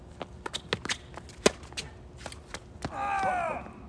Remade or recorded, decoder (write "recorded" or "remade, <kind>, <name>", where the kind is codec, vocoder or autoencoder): recorded